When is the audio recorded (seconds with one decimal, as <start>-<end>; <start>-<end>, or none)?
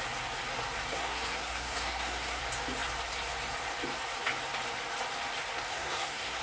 0.0-0.9; 2.4-5.7